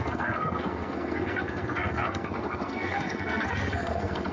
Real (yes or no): no